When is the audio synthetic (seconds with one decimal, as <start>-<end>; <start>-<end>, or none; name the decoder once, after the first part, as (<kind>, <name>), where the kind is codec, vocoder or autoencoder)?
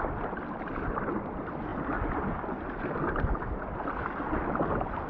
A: none